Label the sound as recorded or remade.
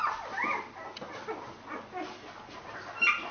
recorded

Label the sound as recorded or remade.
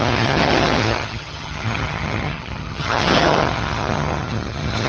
remade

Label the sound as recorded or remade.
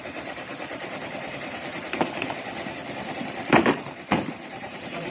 remade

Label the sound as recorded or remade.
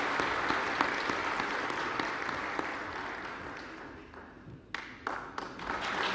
recorded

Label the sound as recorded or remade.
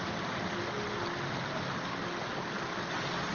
recorded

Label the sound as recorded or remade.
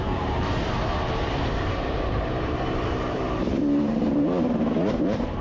remade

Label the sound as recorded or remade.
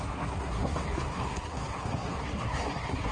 remade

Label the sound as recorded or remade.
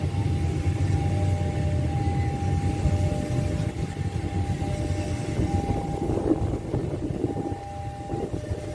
recorded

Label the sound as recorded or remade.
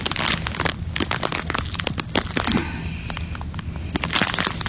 recorded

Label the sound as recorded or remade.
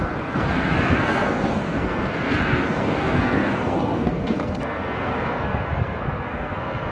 remade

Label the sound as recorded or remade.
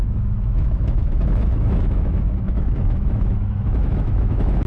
remade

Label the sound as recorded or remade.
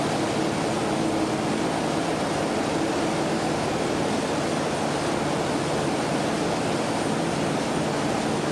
recorded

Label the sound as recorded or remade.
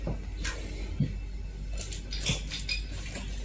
recorded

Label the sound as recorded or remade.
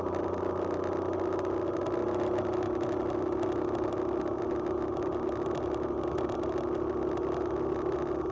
recorded